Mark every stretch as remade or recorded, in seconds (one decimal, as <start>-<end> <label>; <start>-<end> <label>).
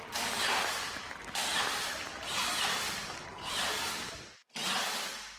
0.0-5.4 recorded